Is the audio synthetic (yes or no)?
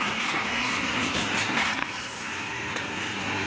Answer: yes